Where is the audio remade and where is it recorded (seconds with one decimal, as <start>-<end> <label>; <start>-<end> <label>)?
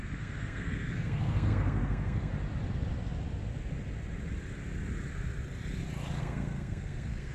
0.0-2.3 remade; 2.3-6.2 recorded; 6.2-7.3 remade